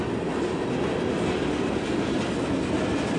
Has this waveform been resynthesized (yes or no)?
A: no